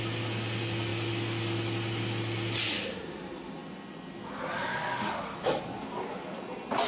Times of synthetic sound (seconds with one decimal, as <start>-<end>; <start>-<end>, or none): 4.7-5.6